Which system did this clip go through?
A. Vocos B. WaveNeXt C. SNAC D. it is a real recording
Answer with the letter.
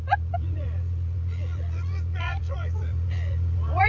A